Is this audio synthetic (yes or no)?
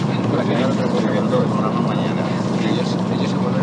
no